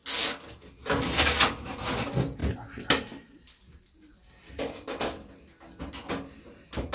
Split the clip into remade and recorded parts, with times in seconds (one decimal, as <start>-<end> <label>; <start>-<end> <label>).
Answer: 0.0-6.9 recorded